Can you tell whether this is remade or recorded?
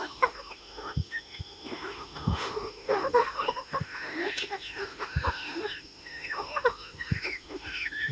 remade